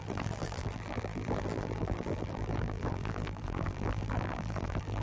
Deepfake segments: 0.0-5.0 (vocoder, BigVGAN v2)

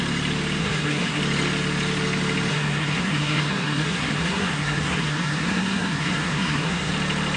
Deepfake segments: 0.6-1.2 (codec, SNAC); 2.5-6.9

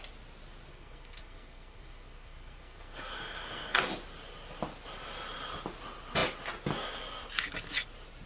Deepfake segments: 0.7-3.8 (codec, SNAC)

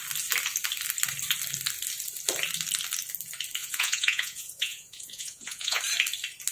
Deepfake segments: 3.6-5.8 (vocoder, Vocos)

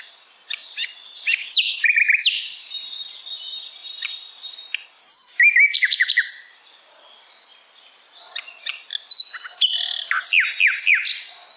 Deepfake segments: 1.4-2.0 (codec, DAC); 5.0-5.5

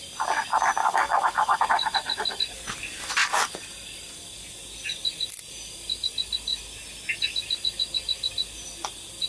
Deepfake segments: 0.8-1.6 (codec, DAC)

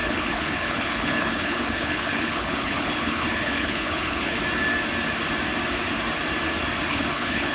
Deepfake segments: 0.0-4.4 (codec, HILCodec); 6.9-7.5

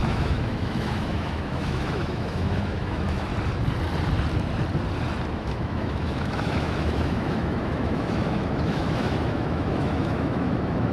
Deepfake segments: 0.0-3.3 (autoencoder, DAC-VAE); 5.3-10.9